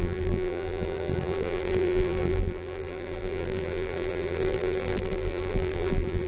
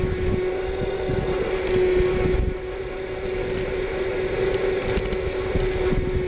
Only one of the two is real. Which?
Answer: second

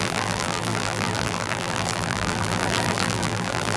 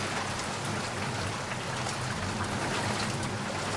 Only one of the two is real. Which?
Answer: second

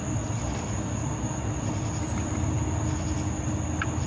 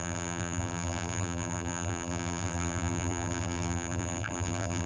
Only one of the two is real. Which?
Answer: first